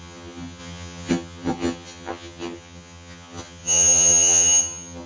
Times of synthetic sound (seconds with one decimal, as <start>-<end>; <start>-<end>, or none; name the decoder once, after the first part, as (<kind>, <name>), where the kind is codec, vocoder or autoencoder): 0.0-5.1 (vocoder, HiFi-GAN)